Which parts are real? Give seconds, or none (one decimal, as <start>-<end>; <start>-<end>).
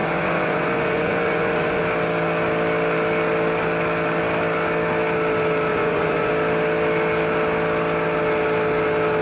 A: 1.8-5.7; 6.3-9.2